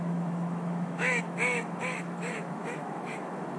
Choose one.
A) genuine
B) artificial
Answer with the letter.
B